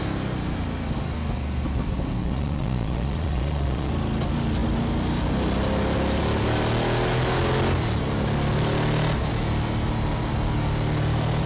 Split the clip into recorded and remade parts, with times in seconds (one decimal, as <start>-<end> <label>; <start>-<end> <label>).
0.0-2.2 recorded; 2.2-3.9 remade; 3.9-11.5 recorded